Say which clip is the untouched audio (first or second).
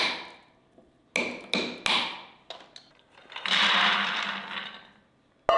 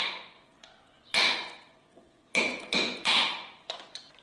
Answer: first